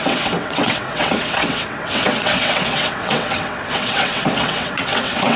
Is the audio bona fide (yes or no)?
no